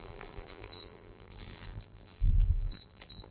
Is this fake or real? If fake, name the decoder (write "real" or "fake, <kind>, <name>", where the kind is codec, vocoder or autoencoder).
fake, vocoder, BigVGAN v2